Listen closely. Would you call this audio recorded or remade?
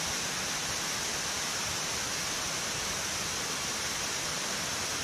recorded